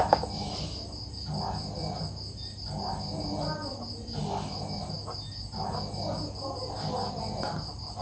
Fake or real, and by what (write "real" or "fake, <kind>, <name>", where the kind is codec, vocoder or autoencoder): real